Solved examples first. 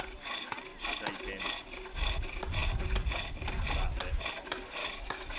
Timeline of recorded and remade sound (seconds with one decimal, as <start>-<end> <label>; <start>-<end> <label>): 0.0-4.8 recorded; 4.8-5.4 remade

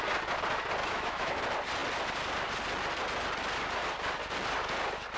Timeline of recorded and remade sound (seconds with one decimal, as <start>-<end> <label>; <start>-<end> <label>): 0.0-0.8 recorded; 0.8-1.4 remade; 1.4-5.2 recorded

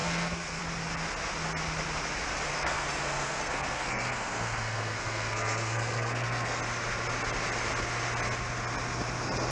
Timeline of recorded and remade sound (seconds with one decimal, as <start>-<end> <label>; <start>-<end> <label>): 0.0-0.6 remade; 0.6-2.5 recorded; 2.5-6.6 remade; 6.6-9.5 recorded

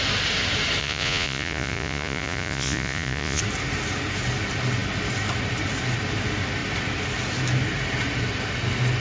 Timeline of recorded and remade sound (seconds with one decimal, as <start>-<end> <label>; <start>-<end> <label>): 0.0-0.8 recorded; 0.8-3.4 remade; 3.4-9.0 recorded